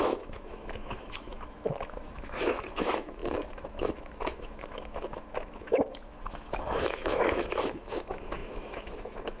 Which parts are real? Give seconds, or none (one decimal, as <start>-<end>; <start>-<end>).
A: none